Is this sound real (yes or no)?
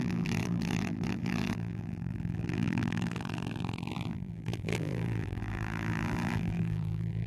no